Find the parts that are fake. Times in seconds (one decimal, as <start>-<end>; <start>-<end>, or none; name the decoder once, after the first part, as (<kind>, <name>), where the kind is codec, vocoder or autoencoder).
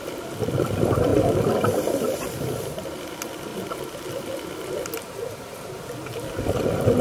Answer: none